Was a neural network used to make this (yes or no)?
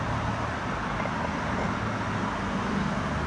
no